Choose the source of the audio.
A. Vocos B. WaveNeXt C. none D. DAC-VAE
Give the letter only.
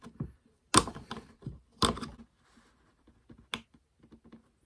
C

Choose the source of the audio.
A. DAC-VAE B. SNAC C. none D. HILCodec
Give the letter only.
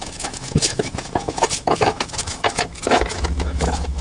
A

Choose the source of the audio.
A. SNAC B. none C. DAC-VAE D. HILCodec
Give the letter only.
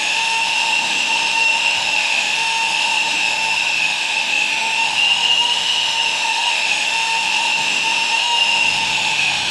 C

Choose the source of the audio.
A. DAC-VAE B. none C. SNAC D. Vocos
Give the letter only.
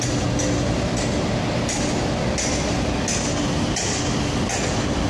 B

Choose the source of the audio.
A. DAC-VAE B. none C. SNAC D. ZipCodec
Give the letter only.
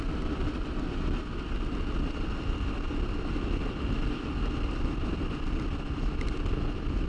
B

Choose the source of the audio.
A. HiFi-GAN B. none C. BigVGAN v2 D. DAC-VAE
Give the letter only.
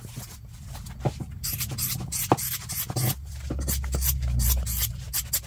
B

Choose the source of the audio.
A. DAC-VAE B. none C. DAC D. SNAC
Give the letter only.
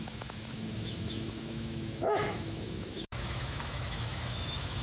A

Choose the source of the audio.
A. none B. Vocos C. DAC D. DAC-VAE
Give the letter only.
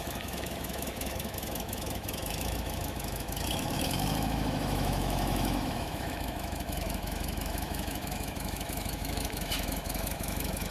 D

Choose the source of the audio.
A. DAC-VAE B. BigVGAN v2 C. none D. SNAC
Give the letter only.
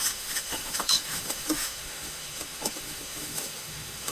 A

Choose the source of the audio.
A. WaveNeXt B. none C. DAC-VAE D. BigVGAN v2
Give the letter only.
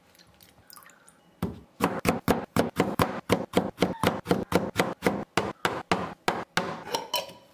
B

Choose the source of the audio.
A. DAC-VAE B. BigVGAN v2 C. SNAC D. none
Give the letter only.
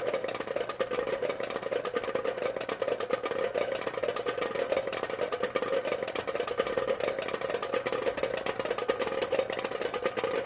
D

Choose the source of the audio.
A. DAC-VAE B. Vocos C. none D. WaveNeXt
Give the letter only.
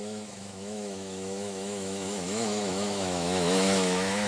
A